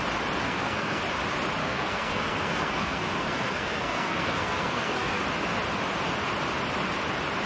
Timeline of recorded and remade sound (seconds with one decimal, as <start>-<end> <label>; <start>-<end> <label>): 0.0-0.4 recorded; 0.4-1.0 remade; 1.0-1.6 recorded; 1.6-5.2 remade; 5.2-7.5 recorded

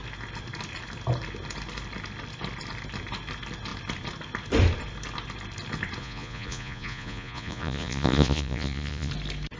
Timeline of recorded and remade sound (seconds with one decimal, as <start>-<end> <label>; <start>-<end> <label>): 0.0-6.0 recorded; 6.0-9.1 remade; 9.1-9.6 recorded

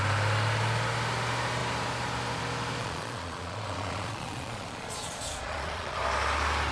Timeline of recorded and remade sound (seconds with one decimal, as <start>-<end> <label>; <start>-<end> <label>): 0.0-2.8 recorded; 2.8-6.0 remade; 6.0-6.7 recorded

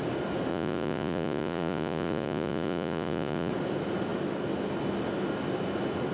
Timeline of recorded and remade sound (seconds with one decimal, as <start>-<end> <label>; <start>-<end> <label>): 0.0-0.5 recorded; 0.5-3.5 remade; 3.5-6.1 recorded

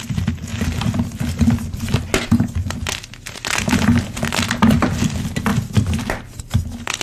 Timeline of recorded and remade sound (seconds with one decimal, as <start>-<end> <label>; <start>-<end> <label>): 0.0-5.5 recorded; 5.5-6.2 remade; 6.2-7.0 recorded

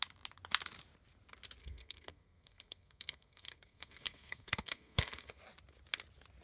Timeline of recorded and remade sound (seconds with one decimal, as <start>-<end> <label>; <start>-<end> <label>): 0.0-1.6 recorded; 1.6-5.4 remade; 5.4-6.4 recorded